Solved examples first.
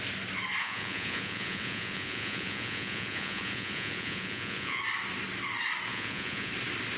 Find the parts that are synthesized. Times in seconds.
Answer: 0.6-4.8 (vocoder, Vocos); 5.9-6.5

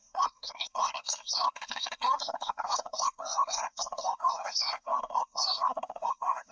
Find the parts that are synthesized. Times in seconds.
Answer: 0.0-6.5 (codec, SNAC)

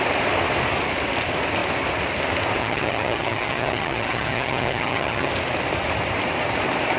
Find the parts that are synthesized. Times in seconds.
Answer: 2.6-5.3 (vocoder, HiFi-GAN)

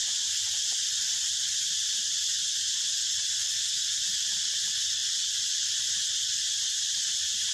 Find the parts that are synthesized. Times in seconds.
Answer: 0.0-1.2 (vocoder, BigVGAN v2); 2.6-7.5

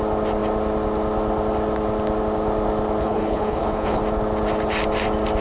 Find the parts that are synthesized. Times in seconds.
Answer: 3.0-4.0 (codec, HILCodec)

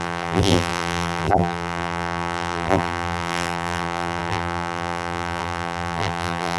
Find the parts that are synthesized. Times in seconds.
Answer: 0.0-6.6 (vocoder, BigVGAN v2)